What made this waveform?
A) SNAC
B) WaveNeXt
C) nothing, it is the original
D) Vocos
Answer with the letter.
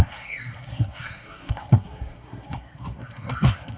A